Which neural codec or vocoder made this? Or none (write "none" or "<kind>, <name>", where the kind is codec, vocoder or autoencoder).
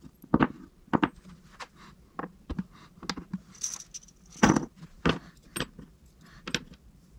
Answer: none